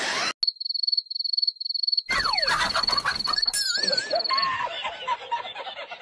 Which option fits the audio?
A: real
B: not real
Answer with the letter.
A